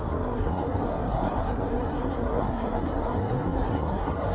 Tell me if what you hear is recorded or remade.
remade